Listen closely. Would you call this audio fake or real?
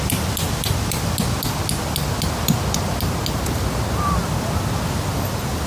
real